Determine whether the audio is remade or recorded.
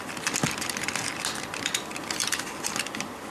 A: recorded